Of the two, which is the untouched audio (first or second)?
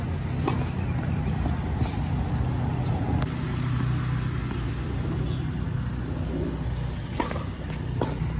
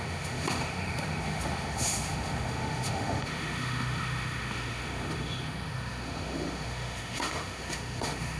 first